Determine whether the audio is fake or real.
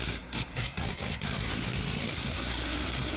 fake